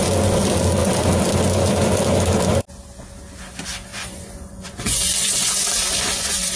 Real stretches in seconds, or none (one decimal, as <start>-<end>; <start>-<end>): 0.0-3.9